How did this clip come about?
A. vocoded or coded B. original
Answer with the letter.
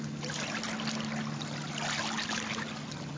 B